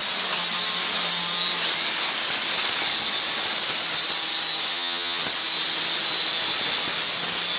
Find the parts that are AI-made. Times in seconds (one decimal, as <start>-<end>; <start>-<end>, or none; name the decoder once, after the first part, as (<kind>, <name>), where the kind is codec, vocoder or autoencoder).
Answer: 4.7-5.2 (vocoder, HiFi-GAN)